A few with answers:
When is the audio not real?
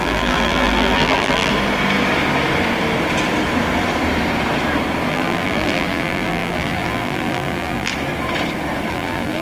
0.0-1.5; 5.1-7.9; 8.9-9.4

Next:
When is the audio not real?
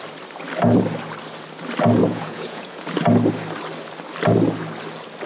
2.0-2.8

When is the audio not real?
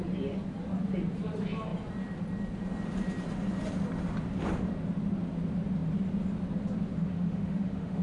7.1-8.0